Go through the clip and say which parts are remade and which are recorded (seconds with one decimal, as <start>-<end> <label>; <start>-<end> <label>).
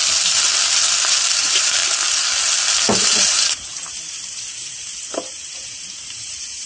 0.0-1.1 recorded; 1.1-1.8 remade; 1.8-3.0 recorded; 3.0-6.7 remade